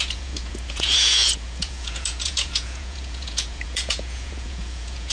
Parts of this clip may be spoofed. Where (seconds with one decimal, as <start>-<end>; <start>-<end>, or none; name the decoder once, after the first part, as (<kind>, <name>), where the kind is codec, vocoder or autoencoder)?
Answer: 0.0-5.1 (vocoder, Vocos)